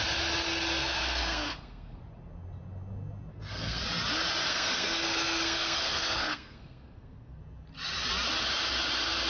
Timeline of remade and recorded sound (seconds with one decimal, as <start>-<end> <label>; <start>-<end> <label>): 0.0-0.8 recorded; 0.8-2.0 remade; 2.0-3.3 recorded; 3.3-3.8 remade; 3.8-4.5 recorded; 4.5-7.4 remade; 7.4-9.3 recorded